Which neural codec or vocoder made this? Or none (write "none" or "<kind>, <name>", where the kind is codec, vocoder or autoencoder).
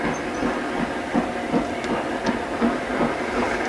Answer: none